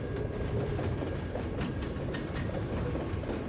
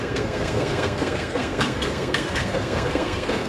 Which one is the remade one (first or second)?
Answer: second